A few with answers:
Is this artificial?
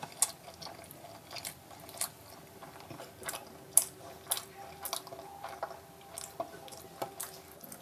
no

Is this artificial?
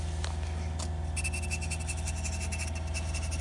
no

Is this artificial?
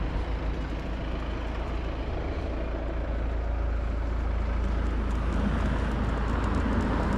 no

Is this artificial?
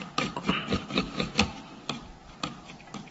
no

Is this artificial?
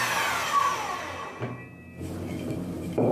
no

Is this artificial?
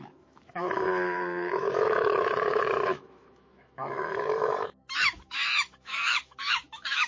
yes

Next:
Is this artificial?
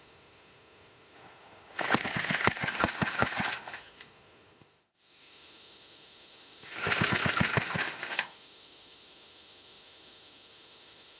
yes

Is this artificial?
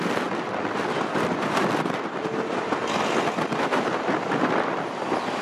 no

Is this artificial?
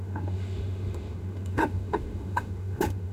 yes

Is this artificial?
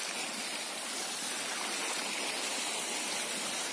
no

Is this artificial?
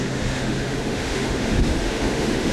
yes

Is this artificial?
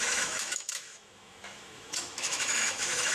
yes